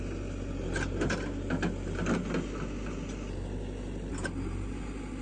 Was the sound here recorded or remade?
recorded